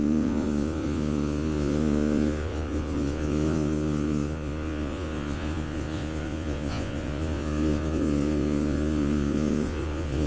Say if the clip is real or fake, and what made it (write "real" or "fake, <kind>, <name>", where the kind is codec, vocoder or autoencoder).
fake, vocoder, Vocos